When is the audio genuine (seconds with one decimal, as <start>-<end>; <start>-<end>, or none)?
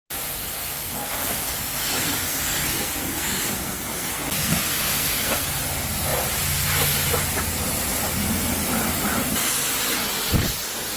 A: 0.0-0.4; 5.6-11.0